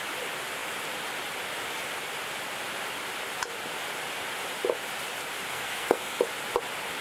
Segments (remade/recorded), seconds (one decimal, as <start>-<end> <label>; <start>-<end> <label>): 0.0-5.5 recorded; 5.5-6.2 remade; 6.2-7.0 recorded